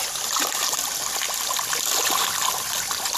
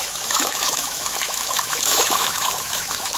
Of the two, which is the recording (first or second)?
first